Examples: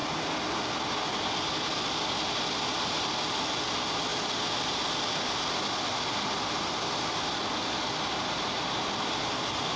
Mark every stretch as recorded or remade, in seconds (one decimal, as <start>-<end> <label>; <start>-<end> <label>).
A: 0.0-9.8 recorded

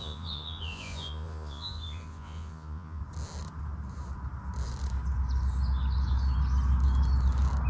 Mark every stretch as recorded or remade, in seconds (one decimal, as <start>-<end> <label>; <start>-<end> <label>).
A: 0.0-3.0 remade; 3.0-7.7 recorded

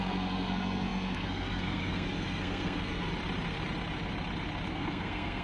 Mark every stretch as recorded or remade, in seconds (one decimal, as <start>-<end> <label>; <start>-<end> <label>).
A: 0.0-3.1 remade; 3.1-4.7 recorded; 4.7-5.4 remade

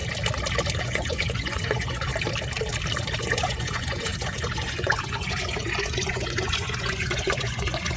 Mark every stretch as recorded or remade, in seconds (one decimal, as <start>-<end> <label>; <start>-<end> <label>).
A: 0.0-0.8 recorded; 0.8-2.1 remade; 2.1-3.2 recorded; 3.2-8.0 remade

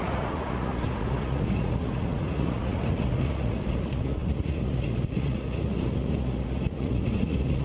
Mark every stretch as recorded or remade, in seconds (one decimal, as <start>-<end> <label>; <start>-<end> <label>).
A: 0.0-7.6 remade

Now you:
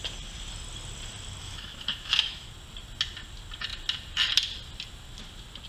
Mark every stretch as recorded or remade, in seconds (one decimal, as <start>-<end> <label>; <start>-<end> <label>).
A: 0.0-1.4 recorded; 1.4-2.5 remade; 2.5-5.7 recorded

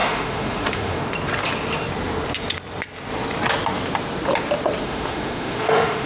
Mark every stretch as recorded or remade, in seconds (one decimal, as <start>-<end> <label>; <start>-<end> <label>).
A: 0.0-1.1 remade; 1.1-4.8 recorded; 4.8-6.1 remade

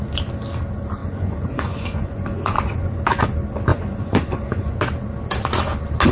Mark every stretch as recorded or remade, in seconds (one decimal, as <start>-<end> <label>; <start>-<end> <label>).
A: 0.0-1.0 recorded; 1.0-3.0 remade; 3.0-3.7 recorded; 3.7-4.8 remade; 4.8-6.1 recorded